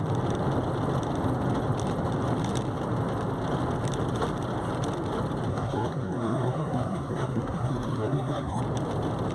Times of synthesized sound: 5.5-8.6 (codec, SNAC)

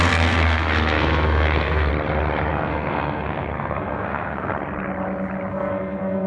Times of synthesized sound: 0.0-1.9 (codec, SNAC); 2.5-4.5; 5.5-6.3